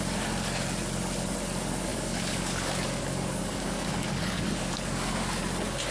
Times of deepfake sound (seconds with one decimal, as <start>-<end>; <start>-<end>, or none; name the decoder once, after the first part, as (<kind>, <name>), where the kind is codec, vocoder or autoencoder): 1.9-5.4 (codec, DAC)